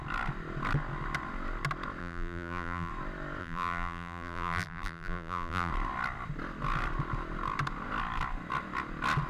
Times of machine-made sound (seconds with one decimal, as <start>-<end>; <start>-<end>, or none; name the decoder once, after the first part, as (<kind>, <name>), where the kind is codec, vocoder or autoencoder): 2.0-2.9 (vocoder, BigVGAN v2); 3.4-5.7